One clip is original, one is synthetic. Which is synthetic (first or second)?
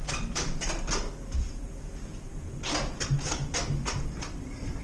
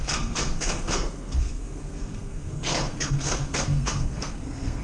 second